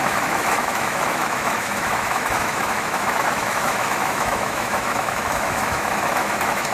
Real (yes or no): no